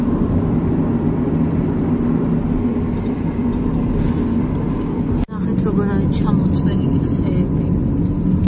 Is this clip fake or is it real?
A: real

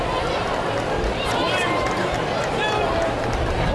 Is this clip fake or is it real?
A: real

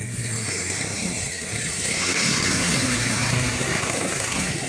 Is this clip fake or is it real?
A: fake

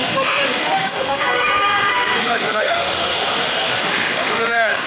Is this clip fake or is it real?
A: fake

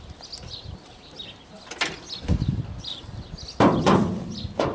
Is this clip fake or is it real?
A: real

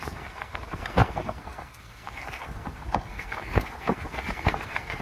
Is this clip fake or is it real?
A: fake